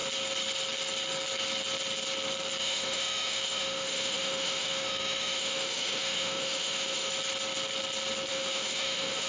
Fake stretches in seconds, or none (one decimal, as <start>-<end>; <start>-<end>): 2.6-7.1; 8.3-9.3